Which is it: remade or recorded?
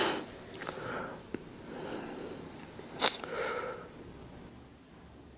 recorded